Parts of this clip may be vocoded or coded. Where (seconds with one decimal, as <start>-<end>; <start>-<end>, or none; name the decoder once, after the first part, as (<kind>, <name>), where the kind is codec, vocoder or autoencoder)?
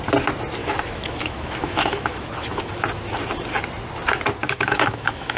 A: 0.6-2.7 (autoencoder, DAC-VAE); 4.4-5.4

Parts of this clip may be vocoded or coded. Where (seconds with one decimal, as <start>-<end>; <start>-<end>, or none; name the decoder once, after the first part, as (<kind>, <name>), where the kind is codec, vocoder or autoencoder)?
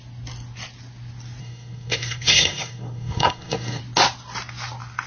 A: 1.4-3.8 (codec, SNAC)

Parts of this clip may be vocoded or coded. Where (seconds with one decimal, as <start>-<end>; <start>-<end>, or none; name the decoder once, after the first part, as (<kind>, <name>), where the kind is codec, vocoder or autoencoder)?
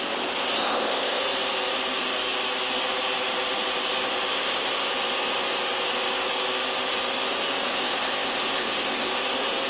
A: 0.6-1.2 (codec, ZipCodec); 4.3-4.9; 7.7-9.1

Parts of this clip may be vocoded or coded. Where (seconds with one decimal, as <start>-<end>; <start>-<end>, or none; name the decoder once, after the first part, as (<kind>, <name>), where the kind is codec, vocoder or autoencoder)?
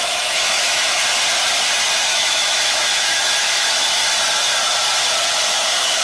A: 0.0-1.0 (autoencoder, DAC-VAE); 2.1-4.0; 5.3-6.0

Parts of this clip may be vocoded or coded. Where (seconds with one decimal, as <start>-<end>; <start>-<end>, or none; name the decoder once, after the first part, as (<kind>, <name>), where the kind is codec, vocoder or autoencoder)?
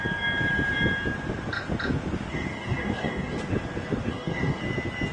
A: 2.3-3.4 (codec, DAC); 4.1-4.6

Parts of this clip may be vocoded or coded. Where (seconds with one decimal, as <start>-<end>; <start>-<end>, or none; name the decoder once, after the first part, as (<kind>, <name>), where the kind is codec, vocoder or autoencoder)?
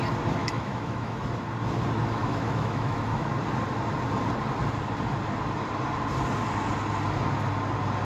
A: 0.4-1.2 (autoencoder, DAC-VAE); 2.2-3.3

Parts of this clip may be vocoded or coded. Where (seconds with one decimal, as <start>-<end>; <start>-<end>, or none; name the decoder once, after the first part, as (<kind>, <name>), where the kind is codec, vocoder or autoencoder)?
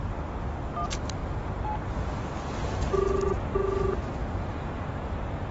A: none